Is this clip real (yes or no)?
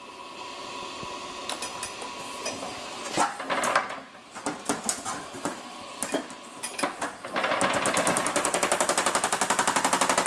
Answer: yes